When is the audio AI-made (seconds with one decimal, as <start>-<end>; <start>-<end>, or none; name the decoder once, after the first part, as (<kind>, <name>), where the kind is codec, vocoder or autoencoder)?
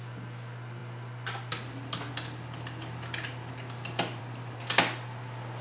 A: none